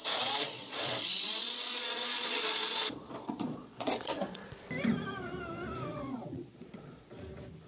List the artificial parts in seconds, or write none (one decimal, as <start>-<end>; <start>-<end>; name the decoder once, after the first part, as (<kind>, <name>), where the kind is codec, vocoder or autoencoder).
0.0-4.6 (vocoder, Vocos); 5.9-7.2